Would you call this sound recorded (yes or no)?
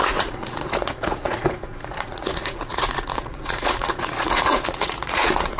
no